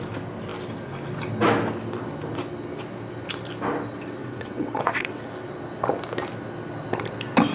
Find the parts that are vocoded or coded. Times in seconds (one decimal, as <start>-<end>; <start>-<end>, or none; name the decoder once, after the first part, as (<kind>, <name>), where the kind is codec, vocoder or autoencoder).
4.2-5.2 (vocoder, WaveNeXt)